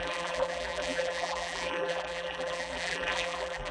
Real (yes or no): no